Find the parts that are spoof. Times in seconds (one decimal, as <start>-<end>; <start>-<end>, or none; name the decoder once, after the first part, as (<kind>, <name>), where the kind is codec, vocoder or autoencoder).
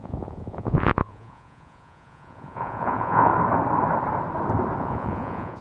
0.0-3.3 (vocoder, Vocos); 4.8-5.6